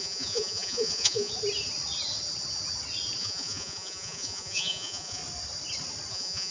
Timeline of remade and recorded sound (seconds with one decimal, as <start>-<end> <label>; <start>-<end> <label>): 0.0-1.3 remade; 1.3-3.2 recorded; 3.2-5.2 remade; 5.2-6.1 recorded; 6.1-6.5 remade